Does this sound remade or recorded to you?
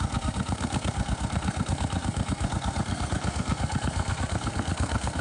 remade